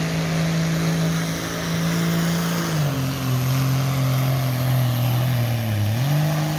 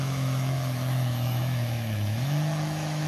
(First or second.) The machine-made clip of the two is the second